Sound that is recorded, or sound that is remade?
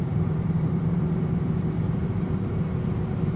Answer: remade